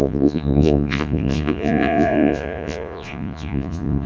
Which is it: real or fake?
fake